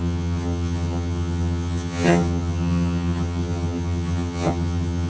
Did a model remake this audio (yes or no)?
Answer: yes